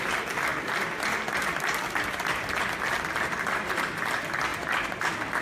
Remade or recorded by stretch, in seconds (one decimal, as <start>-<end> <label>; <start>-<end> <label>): 0.0-5.4 recorded